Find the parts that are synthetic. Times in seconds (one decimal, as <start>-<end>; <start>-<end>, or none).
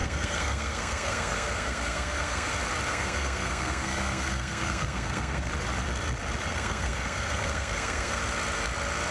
0.0-2.5; 2.9-5.5; 6.5-8.2